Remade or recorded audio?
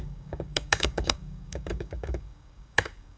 remade